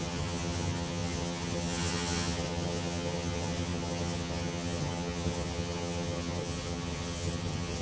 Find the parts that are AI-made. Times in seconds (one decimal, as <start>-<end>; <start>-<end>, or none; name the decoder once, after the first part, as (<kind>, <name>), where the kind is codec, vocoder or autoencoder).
0.0-7.8 (vocoder, HiFi-GAN)